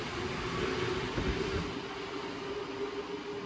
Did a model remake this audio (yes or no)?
no